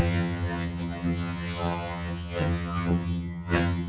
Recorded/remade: remade